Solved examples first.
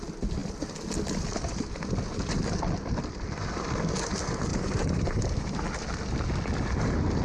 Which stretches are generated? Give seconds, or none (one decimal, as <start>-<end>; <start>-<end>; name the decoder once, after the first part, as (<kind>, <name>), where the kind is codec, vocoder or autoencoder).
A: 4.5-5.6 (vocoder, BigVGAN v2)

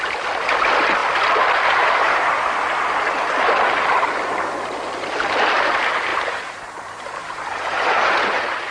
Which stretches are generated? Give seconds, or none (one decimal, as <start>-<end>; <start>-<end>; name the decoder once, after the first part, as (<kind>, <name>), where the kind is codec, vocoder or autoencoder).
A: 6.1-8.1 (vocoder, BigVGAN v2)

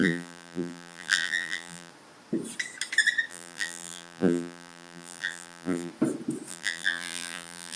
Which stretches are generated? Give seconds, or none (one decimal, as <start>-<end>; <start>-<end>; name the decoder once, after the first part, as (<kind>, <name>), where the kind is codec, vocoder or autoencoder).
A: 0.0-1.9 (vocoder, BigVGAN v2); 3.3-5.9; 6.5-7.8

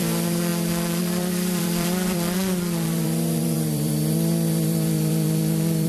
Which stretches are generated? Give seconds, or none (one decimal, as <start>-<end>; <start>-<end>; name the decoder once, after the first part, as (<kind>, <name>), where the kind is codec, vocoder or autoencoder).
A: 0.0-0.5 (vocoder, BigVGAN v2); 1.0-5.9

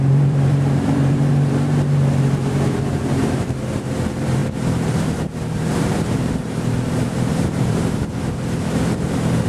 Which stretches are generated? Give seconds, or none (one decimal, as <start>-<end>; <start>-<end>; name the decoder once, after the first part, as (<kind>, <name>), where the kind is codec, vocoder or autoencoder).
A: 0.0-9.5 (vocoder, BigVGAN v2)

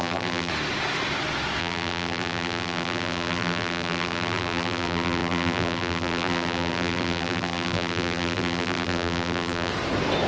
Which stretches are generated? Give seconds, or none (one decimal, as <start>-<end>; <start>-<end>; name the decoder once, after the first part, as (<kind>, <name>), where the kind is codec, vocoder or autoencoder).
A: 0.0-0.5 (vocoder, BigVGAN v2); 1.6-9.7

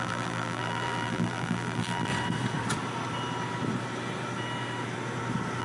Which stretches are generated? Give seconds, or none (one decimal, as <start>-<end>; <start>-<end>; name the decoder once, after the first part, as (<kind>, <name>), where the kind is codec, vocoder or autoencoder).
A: 0.0-2.1 (vocoder, BigVGAN v2)

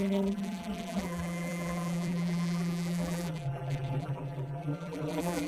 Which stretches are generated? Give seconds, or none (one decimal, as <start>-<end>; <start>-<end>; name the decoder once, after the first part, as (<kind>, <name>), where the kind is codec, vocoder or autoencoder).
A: 0.0-5.5 (vocoder, BigVGAN v2)